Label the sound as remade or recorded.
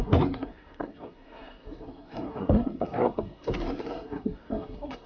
remade